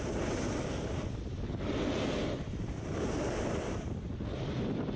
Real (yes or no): yes